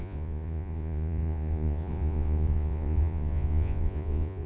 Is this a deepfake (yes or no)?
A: yes